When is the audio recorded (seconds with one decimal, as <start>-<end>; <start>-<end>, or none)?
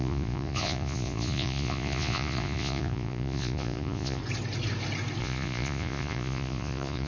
4.2-5.2